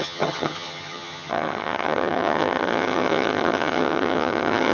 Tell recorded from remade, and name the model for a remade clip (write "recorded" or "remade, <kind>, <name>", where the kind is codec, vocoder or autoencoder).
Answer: remade, vocoder, HiFi-GAN